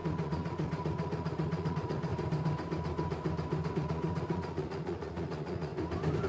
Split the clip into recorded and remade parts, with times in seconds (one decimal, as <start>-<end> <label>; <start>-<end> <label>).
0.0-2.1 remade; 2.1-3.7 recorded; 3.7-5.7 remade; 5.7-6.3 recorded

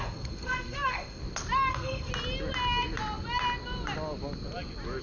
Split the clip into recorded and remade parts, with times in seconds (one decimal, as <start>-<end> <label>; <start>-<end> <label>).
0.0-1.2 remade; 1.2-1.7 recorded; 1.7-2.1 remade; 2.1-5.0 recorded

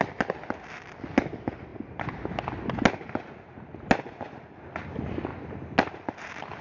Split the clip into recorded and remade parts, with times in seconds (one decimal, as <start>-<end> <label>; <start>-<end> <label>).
0.0-6.6 recorded

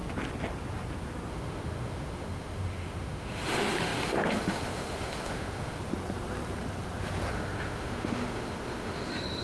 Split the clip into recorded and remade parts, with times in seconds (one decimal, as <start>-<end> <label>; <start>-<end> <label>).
0.0-1.3 recorded; 1.3-5.8 remade; 5.8-7.3 recorded; 7.3-9.4 remade

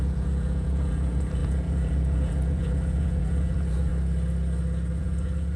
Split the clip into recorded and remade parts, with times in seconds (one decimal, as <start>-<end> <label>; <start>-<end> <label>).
0.0-3.9 remade; 3.9-5.0 recorded; 5.0-5.6 remade

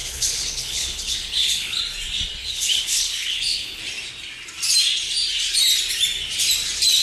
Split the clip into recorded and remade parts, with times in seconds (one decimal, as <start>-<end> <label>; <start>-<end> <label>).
0.0-1.8 remade; 1.8-2.4 recorded; 2.4-3.8 remade; 3.8-7.0 recorded

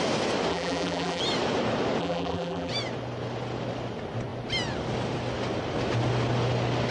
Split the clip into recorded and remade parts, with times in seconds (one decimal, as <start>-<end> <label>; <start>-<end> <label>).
0.0-0.5 recorded; 0.5-1.2 remade; 1.2-2.0 recorded; 2.0-2.7 remade; 2.7-6.9 recorded